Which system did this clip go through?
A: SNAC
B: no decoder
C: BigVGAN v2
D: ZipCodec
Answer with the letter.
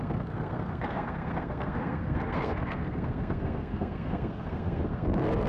A